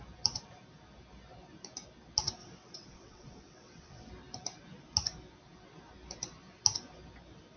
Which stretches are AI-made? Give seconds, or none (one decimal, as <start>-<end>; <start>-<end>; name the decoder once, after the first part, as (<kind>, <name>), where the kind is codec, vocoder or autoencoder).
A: 2.4-4.1 (vocoder, WaveNeXt)